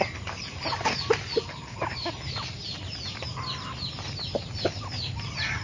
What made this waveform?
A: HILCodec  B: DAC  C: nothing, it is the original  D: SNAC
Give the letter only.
C